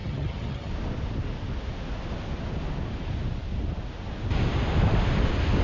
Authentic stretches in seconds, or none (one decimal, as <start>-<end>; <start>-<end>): 0.7-5.6